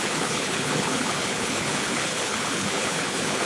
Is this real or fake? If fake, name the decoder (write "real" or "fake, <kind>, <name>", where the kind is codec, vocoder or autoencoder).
fake, codec, HILCodec